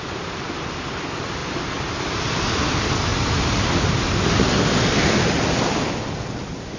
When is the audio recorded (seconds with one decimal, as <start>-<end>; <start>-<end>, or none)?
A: 0.0-6.8